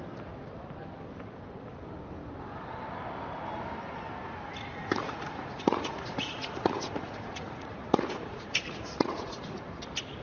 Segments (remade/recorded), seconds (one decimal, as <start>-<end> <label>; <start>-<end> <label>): 0.0-4.7 recorded; 4.7-9.6 remade; 9.6-10.2 recorded